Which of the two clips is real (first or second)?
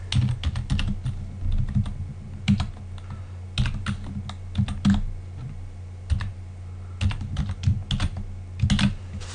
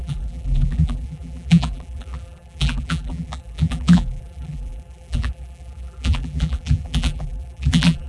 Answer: first